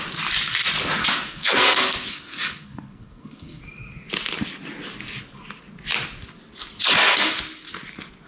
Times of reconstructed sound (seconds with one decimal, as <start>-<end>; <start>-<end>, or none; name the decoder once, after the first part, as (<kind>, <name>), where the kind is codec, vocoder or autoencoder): 1.0-3.6 (codec, SNAC)